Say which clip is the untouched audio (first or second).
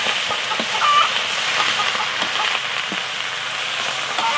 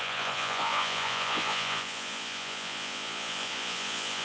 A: first